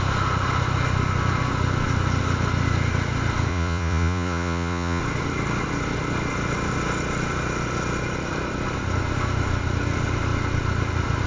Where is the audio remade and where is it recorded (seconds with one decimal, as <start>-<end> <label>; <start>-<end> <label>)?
0.0-3.5 recorded; 3.5-5.0 remade; 5.0-11.3 recorded